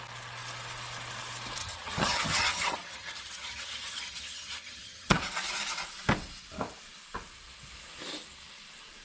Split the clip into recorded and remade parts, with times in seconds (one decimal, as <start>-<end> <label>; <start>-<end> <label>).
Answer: 0.0-1.6 recorded; 1.6-5.2 remade; 5.2-9.0 recorded